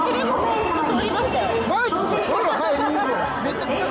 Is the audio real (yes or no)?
yes